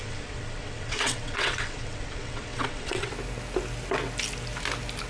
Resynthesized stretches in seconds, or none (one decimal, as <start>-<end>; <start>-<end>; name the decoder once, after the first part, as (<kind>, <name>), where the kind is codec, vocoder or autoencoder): 0.0-3.1 (vocoder, WaveNeXt)